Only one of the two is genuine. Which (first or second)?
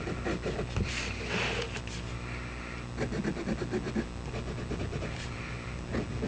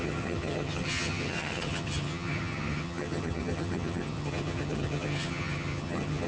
first